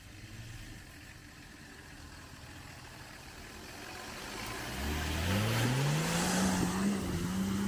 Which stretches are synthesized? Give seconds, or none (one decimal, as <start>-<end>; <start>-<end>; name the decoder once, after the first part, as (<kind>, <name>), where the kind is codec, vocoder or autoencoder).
1.2-3.5 (vocoder, BigVGAN v2)